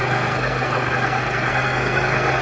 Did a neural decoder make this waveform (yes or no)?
yes